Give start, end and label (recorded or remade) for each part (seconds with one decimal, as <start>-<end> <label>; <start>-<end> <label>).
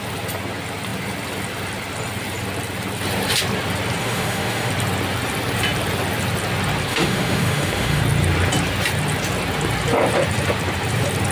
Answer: 0.0-4.0 recorded; 4.0-4.7 remade; 4.7-6.9 recorded; 6.9-8.0 remade; 8.0-11.3 recorded